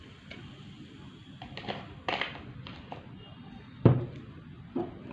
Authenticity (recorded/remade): recorded